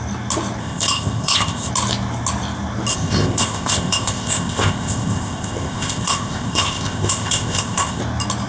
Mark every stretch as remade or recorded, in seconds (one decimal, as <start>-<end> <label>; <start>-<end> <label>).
0.0-0.6 recorded; 0.6-1.7 remade; 1.7-2.9 recorded; 2.9-8.0 remade; 8.0-8.5 recorded